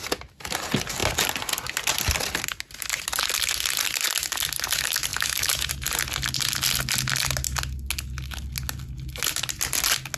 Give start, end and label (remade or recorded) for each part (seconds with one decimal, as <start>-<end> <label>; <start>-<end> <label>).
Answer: 0.0-5.1 recorded; 5.1-5.7 remade; 5.7-10.2 recorded